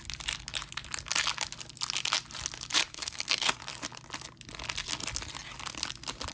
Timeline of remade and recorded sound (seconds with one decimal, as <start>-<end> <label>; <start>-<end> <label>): 0.0-2.9 recorded; 2.9-3.6 remade; 3.6-6.3 recorded